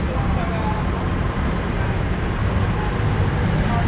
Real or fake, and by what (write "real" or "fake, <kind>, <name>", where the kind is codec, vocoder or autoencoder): real